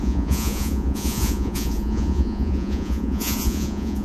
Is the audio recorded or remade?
remade